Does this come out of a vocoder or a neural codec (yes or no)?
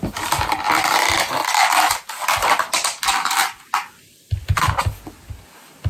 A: no